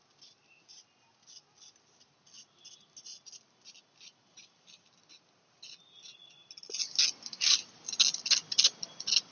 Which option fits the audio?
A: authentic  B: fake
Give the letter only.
A